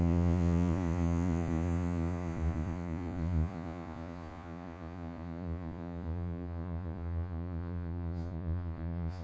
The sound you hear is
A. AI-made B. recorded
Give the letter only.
A